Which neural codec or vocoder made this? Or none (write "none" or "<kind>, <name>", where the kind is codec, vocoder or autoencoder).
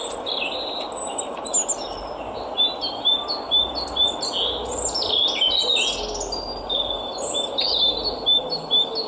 none